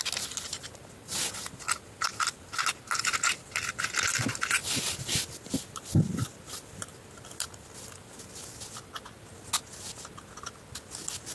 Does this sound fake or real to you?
real